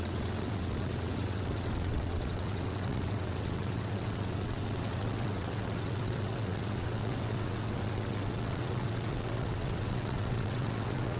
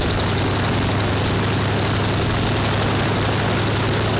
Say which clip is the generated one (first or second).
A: first